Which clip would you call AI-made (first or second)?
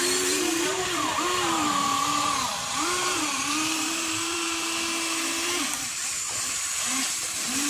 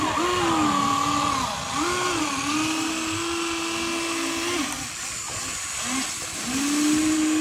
first